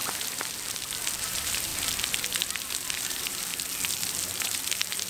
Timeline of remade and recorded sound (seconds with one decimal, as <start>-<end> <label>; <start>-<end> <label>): 0.0-1.2 recorded; 1.2-1.7 remade; 1.7-2.9 recorded; 2.9-3.5 remade; 3.5-4.2 recorded; 4.2-5.1 remade